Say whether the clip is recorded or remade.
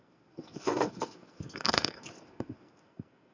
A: remade